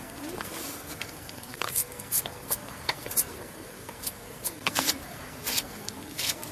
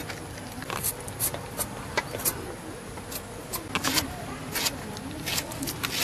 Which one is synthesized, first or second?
first